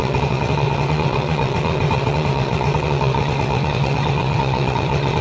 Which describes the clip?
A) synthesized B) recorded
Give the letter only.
A